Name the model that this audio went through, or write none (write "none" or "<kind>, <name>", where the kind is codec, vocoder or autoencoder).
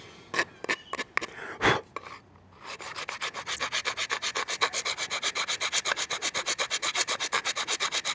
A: none